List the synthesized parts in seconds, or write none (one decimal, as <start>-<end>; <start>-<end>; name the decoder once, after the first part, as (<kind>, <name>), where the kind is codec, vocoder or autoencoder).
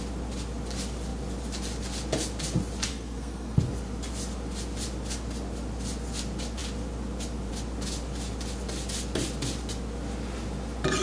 2.9-3.6 (codec, SNAC)